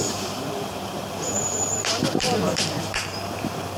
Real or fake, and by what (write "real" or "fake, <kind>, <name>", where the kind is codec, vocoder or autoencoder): fake, vocoder, BigVGAN v2